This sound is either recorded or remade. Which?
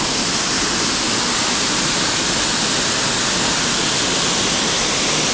recorded